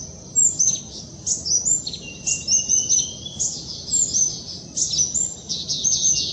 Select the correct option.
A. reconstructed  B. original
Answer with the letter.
B